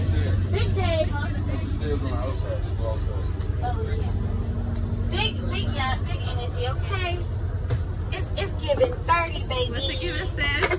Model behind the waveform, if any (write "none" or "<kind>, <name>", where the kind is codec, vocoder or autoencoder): none